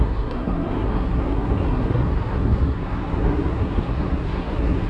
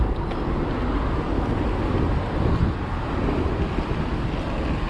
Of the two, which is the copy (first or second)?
first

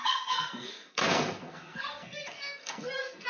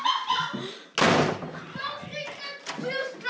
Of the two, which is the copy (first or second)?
first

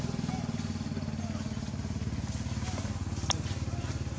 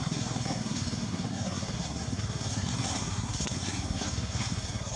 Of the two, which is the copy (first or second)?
second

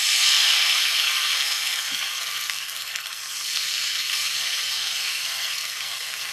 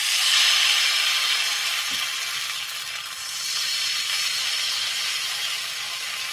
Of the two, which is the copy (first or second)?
first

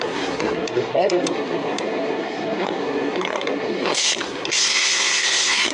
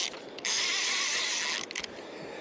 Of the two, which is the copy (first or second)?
first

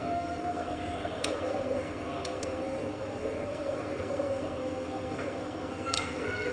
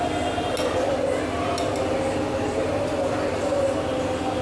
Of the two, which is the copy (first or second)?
first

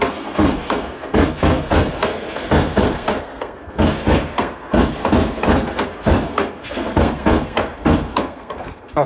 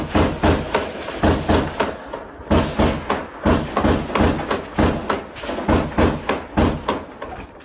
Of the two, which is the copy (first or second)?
first